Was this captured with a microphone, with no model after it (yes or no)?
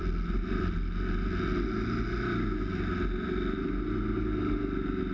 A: yes